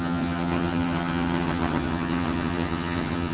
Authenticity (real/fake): fake